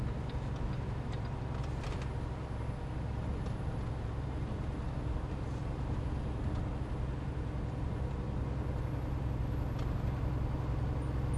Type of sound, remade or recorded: recorded